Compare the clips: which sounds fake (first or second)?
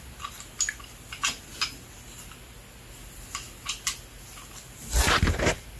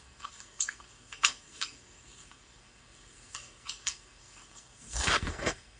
second